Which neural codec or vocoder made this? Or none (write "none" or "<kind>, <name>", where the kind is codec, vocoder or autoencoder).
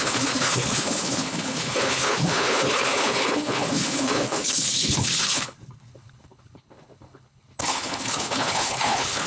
codec, HILCodec